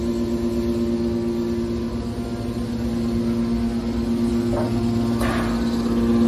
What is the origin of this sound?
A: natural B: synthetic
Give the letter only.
A